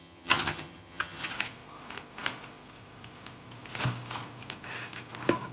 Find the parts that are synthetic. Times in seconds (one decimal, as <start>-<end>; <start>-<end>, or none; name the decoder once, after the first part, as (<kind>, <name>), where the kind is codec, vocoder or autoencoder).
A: 0.0-1.3 (vocoder, HiFi-GAN)